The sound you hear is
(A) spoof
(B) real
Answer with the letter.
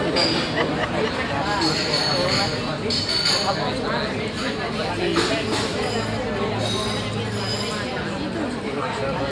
B